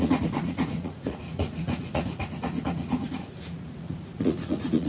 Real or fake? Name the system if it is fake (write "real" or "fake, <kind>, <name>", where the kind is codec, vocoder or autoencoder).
fake, vocoder, Vocos